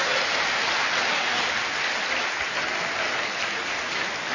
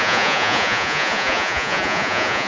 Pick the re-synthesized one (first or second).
second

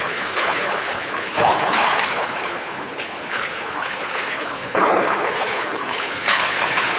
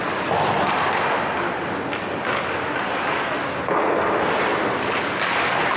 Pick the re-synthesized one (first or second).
first